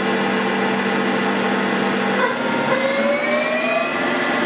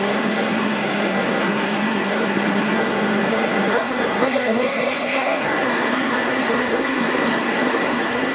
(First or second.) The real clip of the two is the first